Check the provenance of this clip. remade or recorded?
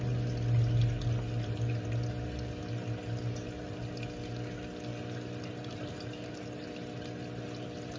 recorded